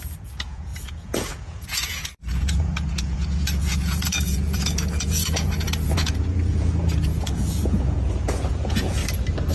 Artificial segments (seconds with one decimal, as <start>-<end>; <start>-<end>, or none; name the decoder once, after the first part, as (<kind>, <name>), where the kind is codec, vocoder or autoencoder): 0.0-9.0 (vocoder, Vocos)